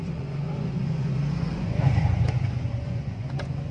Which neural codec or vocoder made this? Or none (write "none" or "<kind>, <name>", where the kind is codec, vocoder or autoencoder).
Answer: vocoder, Vocos